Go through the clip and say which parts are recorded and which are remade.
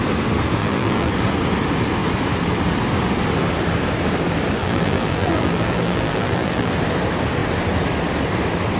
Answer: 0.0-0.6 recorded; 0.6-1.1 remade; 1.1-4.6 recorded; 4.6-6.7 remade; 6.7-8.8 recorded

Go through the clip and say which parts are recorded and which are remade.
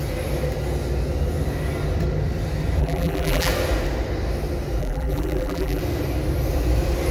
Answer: 0.0-2.8 recorded; 2.8-3.5 remade; 3.5-4.8 recorded; 4.8-5.8 remade; 5.8-7.1 recorded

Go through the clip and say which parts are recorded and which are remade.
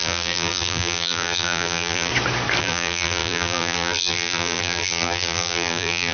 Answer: 0.0-2.1 remade; 2.1-2.6 recorded; 2.6-6.1 remade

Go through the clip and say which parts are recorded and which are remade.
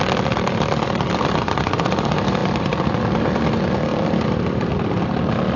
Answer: 0.0-2.4 recorded; 2.4-3.5 remade; 3.5-3.9 recorded; 3.9-4.8 remade; 4.8-5.6 recorded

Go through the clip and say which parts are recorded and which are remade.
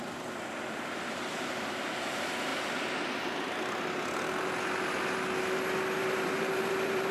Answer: 0.0-2.5 remade; 2.5-6.0 recorded; 6.0-7.1 remade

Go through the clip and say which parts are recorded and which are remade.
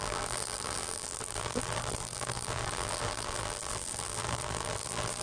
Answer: 0.0-5.2 remade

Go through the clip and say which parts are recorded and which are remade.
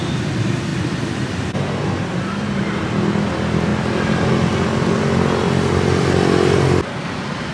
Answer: 0.0-0.7 recorded; 0.7-2.2 remade; 2.2-7.5 recorded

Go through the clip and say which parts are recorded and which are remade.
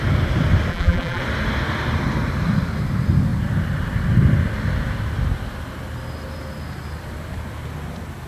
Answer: 0.0-0.7 recorded; 0.7-1.2 remade; 1.2-8.3 recorded